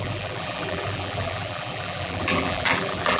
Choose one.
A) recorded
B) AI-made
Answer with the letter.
B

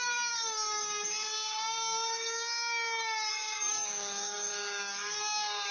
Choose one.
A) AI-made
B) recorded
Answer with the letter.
A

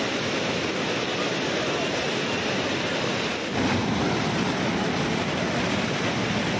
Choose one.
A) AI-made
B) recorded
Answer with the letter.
B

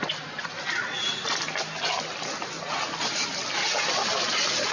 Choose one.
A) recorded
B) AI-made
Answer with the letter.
A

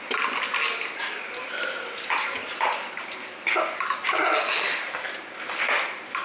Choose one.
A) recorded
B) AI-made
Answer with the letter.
A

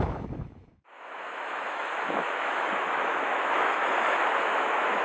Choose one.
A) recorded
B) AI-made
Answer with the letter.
B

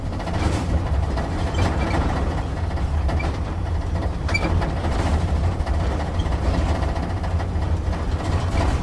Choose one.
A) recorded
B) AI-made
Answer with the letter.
A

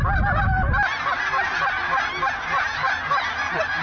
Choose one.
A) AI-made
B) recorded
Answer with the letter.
B